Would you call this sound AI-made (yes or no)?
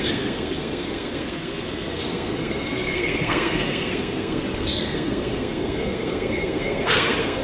yes